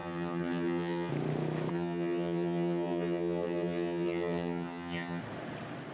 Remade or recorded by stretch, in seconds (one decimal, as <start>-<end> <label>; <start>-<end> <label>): 0.0-1.1 remade; 1.1-1.7 recorded; 1.7-5.2 remade; 5.2-5.9 recorded